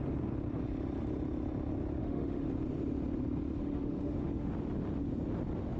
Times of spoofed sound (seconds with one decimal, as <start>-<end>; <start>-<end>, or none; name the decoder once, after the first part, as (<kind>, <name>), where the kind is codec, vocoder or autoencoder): 2.0-2.5 (autoencoder, DAC-VAE); 3.6-4.5